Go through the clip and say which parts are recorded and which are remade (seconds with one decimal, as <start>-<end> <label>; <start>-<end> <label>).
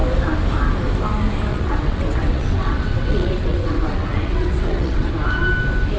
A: 0.0-1.5 recorded; 1.5-5.1 remade; 5.1-6.0 recorded